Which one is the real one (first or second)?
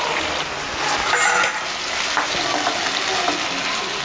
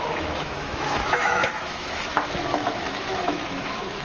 first